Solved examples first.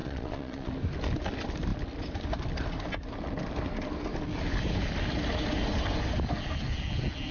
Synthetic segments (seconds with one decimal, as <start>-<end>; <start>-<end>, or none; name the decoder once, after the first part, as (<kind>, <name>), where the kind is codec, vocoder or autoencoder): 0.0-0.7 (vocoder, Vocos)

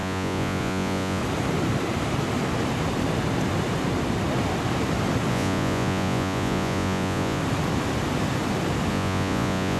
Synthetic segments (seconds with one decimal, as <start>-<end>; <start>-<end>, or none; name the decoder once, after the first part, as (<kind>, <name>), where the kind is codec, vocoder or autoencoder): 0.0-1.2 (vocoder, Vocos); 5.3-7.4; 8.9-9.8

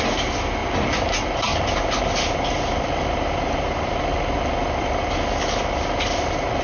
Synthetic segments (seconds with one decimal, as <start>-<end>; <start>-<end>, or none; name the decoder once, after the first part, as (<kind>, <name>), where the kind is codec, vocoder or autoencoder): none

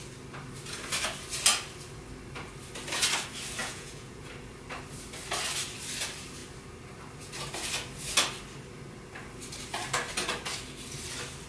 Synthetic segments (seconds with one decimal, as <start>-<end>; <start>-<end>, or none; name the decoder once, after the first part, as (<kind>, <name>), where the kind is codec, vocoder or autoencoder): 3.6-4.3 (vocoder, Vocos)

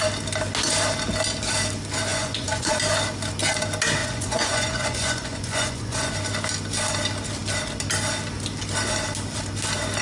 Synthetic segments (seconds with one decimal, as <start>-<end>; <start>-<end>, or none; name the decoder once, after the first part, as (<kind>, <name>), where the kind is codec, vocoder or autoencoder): 2.1-2.7 (vocoder, Vocos); 4.0-6.1

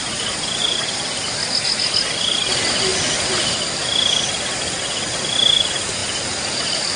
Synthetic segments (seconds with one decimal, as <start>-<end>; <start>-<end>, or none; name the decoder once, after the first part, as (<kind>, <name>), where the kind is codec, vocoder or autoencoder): none

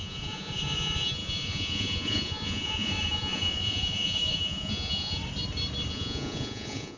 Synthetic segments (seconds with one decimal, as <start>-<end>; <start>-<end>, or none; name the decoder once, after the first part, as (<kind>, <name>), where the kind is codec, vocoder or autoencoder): 0.0-5.2 (vocoder, Vocos); 5.9-7.0

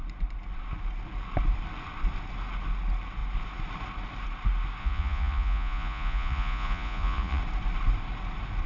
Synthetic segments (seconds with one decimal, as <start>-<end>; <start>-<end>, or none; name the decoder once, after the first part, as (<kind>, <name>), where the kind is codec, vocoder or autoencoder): 4.8-7.4 (vocoder, Vocos)